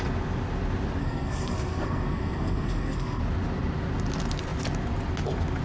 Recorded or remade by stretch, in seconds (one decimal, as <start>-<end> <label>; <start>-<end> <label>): 0.0-1.0 recorded; 1.0-3.2 remade; 3.2-5.6 recorded